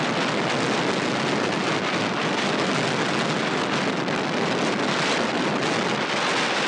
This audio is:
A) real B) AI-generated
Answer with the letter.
A